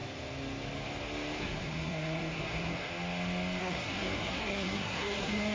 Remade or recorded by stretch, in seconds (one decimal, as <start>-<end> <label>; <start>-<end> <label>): 0.0-1.4 recorded; 1.4-2.9 remade; 2.9-3.6 recorded; 3.6-5.5 remade